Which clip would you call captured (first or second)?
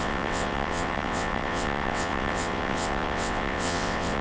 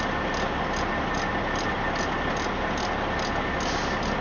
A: second